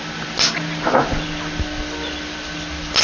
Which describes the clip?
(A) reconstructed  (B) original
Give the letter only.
B